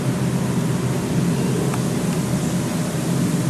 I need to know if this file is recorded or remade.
recorded